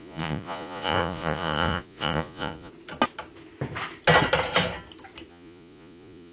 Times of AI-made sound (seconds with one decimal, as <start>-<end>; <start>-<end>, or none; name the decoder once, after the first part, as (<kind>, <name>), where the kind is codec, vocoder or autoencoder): 0.0-2.7 (vocoder, Vocos); 5.3-6.3